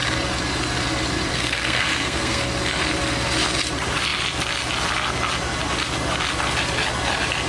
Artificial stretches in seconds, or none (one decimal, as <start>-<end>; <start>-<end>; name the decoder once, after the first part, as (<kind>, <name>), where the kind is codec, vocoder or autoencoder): 1.3-2.4 (codec, SNAC)